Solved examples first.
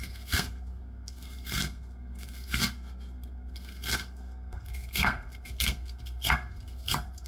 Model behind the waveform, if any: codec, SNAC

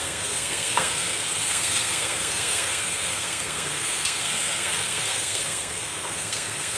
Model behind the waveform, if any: codec, SNAC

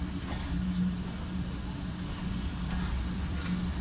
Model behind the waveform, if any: none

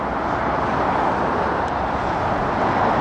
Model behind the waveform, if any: none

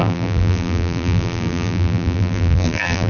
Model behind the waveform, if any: vocoder, BigVGAN v2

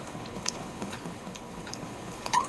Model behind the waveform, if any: codec, HILCodec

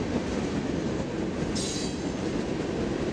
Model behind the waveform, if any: none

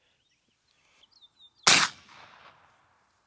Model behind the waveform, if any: none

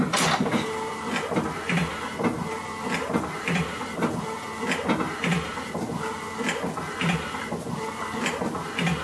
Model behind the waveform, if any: none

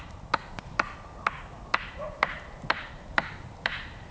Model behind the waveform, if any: none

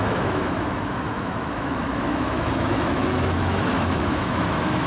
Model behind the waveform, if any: autoencoder, DAC-VAE